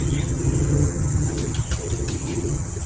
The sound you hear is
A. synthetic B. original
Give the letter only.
A